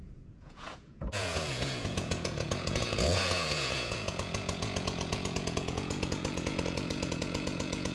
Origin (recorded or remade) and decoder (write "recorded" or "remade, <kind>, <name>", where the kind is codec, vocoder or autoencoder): remade, vocoder, Vocos